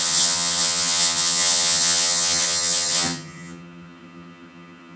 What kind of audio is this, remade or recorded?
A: remade